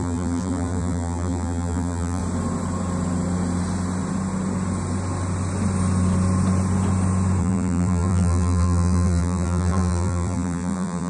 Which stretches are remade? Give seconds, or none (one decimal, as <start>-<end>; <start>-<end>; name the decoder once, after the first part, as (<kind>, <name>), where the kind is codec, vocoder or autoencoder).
0.0-2.2 (vocoder, BigVGAN v2); 7.4-11.1

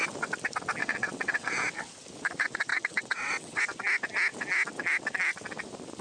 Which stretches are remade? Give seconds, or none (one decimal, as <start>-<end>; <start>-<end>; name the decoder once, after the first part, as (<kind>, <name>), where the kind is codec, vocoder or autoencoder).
0.8-1.5 (vocoder, WaveNeXt); 2.7-3.6

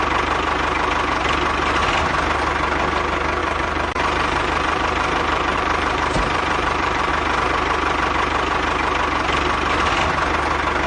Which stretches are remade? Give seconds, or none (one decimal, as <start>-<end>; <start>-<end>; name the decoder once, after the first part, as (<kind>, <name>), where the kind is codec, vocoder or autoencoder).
3.4-7.1 (vocoder, BigVGAN v2)

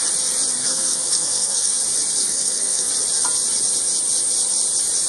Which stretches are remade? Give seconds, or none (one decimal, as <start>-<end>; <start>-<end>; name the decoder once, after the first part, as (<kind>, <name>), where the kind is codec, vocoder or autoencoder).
0.6-1.8 (codec, SNAC); 2.2-2.9

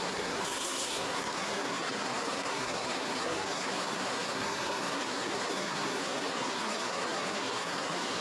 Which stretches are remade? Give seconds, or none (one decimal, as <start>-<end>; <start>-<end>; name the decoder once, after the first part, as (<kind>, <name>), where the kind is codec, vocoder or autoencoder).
0.0-8.2 (codec, SNAC)

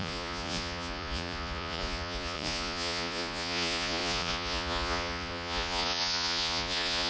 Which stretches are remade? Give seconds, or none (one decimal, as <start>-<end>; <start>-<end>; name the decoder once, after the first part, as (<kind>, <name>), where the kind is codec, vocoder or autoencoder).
0.0-7.1 (vocoder, Vocos)

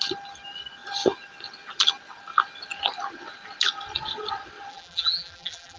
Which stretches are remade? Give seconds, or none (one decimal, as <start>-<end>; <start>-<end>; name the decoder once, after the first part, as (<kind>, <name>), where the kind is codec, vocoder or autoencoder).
4.7-5.8 (vocoder, BigVGAN v2)